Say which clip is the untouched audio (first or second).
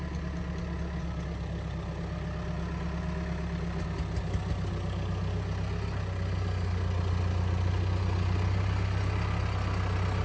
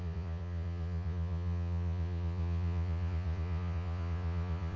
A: first